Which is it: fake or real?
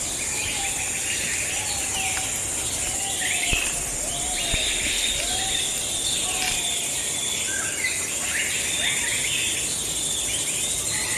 real